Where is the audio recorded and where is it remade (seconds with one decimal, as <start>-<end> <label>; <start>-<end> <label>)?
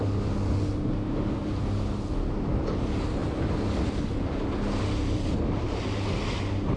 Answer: 0.0-6.8 recorded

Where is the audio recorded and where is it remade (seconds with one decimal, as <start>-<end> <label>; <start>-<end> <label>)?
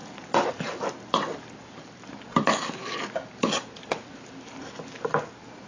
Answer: 0.0-5.7 recorded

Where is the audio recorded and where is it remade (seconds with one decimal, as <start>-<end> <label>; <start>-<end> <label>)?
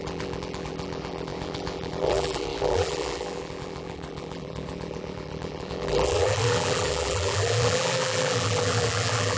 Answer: 0.0-9.4 remade